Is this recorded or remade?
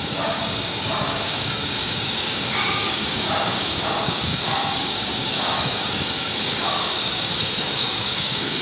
remade